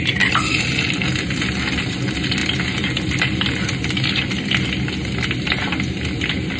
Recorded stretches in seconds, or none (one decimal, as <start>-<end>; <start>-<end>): 0.0-6.6